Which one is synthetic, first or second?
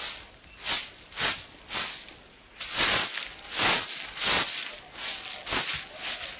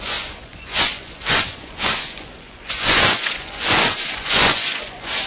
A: second